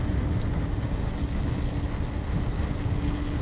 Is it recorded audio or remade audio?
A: recorded